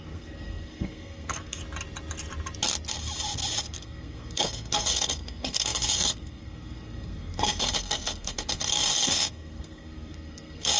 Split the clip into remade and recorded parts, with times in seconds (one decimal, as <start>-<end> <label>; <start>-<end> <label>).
0.0-1.6 remade; 1.6-3.6 recorded; 3.6-10.8 remade